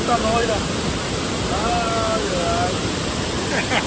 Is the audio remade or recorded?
recorded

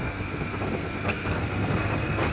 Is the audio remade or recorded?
remade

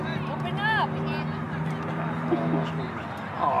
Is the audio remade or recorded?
recorded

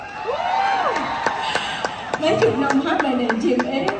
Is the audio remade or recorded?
recorded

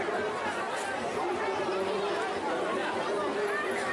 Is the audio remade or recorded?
recorded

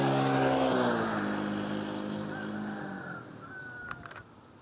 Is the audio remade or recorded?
recorded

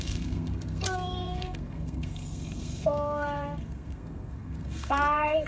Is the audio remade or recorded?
remade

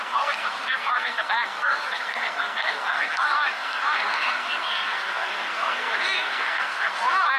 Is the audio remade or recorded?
remade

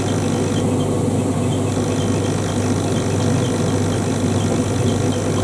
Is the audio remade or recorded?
recorded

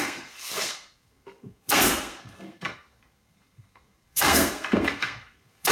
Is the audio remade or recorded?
remade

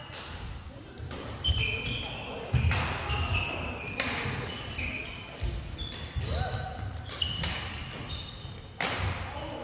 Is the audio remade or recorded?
recorded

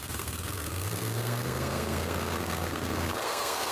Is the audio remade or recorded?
remade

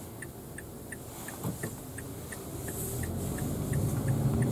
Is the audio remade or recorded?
recorded